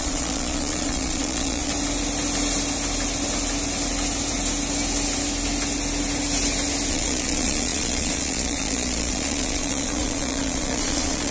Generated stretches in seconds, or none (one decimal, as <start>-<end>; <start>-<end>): 0.0-1.7; 6.9-11.3